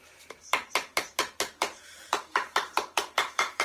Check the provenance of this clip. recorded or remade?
remade